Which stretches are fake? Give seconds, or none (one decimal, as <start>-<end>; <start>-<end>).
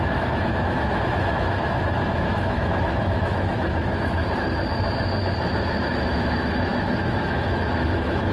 0.0-4.2; 5.9-8.3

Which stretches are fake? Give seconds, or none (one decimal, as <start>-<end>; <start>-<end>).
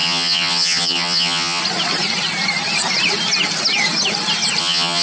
0.0-1.6; 4.6-5.0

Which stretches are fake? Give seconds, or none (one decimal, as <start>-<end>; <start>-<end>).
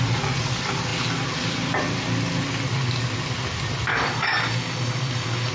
3.9-5.5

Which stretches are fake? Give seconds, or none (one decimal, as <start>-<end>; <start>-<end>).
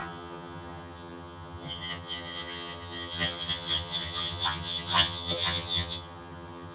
0.0-6.7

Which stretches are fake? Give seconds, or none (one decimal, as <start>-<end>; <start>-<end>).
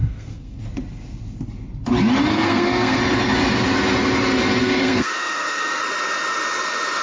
0.0-0.6; 2.3-3.0; 4.6-5.8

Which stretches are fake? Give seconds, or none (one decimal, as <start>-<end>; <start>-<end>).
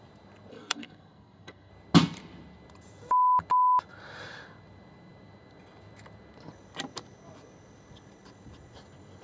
0.5-1.7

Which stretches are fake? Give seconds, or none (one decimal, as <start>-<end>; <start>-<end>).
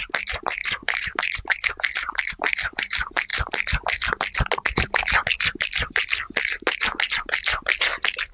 0.6-2.3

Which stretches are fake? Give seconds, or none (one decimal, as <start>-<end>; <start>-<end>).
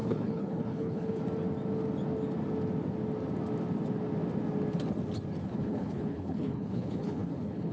0.0-1.2; 5.4-7.7